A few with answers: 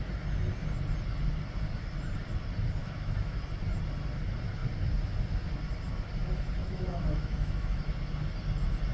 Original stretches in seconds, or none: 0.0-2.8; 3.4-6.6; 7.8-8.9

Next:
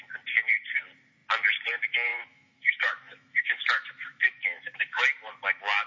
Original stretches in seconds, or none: 0.0-2.1; 5.3-5.9